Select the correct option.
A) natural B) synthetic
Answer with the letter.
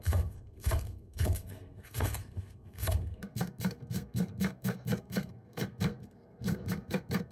B